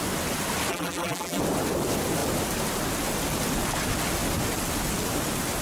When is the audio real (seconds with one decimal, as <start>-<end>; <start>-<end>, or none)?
0.0-0.7; 1.4-5.6